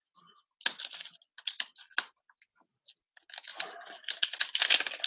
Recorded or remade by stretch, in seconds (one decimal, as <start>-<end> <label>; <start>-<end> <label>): 0.0-5.1 recorded